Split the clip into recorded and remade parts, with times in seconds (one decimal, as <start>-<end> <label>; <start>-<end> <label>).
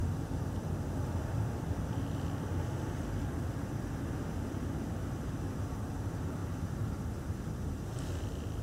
0.0-8.6 recorded